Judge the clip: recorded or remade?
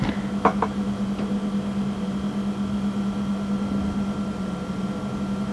recorded